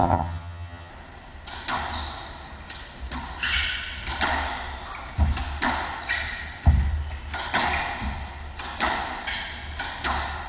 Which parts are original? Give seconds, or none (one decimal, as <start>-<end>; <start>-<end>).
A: 0.9-10.5